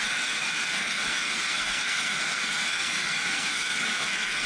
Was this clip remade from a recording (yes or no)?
yes